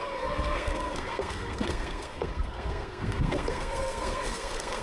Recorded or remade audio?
remade